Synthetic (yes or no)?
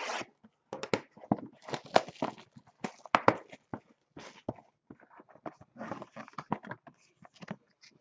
no